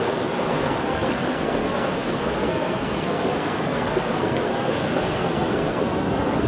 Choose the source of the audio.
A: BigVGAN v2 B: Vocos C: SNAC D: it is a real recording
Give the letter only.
C